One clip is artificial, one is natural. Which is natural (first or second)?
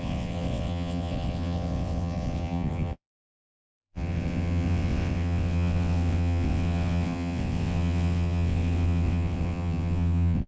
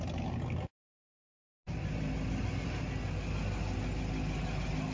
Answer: second